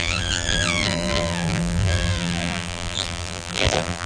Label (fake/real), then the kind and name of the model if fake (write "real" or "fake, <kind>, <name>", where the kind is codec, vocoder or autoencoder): fake, vocoder, BigVGAN v2